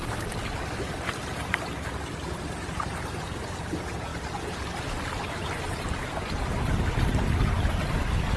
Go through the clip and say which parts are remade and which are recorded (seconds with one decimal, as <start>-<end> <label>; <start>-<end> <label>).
0.0-1.2 remade; 1.2-8.4 recorded